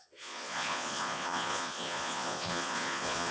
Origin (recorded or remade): remade